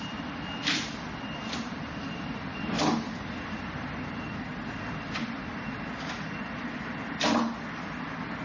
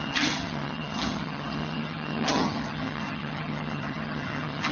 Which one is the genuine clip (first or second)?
first